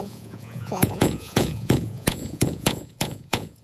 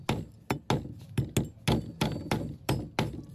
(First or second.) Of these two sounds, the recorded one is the second